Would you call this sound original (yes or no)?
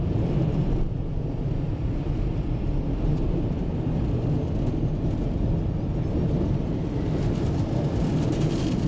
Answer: no